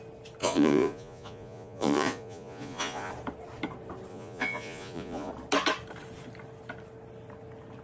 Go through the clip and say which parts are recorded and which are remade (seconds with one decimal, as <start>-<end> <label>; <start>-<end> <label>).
0.0-0.4 recorded; 0.4-3.1 remade; 3.1-4.1 recorded; 4.1-5.3 remade; 5.3-7.8 recorded